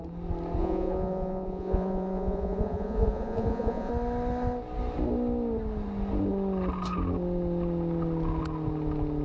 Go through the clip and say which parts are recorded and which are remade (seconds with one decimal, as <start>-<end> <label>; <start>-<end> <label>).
0.0-0.6 recorded; 0.6-3.9 remade; 3.9-9.2 recorded